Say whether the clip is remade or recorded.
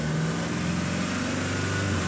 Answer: recorded